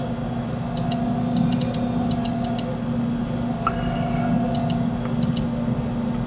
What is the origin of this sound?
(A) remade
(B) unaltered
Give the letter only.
B